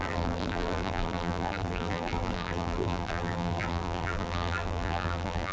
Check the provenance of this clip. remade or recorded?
remade